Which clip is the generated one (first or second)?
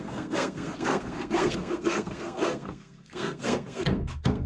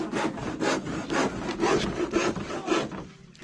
first